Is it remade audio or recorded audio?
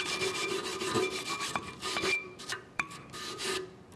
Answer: remade